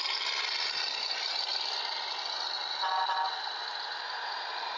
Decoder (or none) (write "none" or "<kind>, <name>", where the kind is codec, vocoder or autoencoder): none